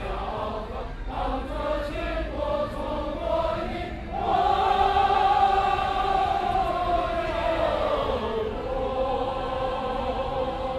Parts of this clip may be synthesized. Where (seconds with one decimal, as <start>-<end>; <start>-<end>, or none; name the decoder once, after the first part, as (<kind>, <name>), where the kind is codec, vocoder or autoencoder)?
none